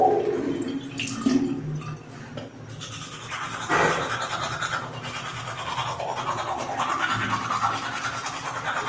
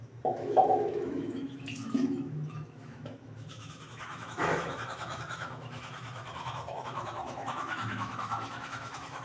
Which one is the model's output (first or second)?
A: second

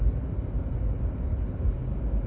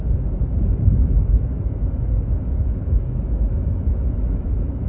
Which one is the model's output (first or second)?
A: second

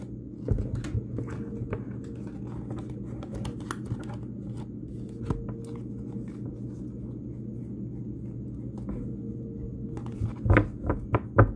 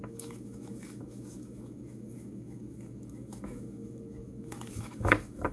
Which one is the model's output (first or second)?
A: second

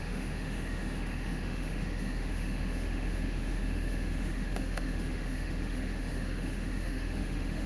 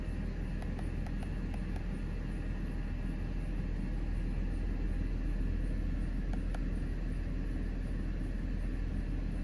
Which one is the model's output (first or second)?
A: first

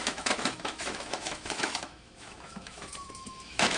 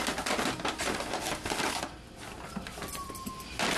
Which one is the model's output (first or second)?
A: first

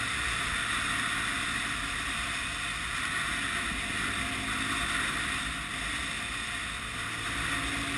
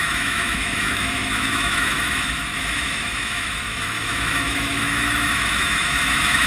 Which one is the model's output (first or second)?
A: second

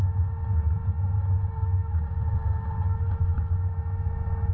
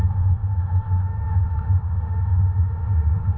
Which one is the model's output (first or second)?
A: second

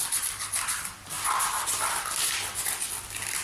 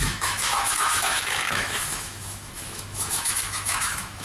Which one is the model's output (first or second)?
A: second